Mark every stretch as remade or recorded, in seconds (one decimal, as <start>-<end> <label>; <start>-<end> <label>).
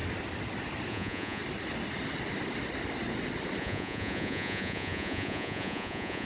0.0-0.9 recorded; 0.9-1.4 remade; 1.4-3.6 recorded; 3.6-6.3 remade